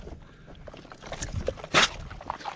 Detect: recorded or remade recorded